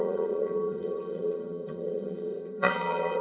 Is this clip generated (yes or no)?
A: yes